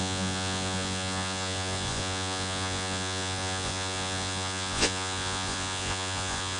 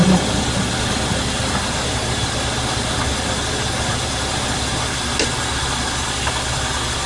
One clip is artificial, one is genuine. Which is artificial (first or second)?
first